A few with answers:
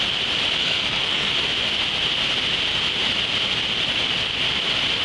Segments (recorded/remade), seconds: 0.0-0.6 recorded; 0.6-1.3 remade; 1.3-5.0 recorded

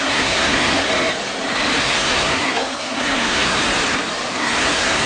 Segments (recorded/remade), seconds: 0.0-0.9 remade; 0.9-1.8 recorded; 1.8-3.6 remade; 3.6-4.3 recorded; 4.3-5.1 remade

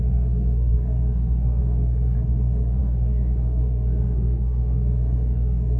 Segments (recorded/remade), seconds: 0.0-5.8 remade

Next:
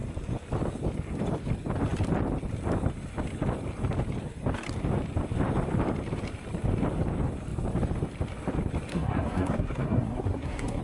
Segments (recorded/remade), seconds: 0.0-8.9 recorded; 8.9-10.8 remade